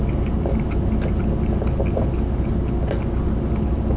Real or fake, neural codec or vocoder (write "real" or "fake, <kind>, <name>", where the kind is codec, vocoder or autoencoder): real